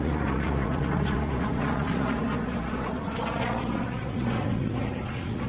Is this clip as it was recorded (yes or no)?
no